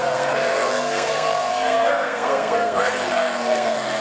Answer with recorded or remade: remade